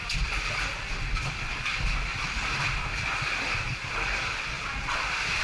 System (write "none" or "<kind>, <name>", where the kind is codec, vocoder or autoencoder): none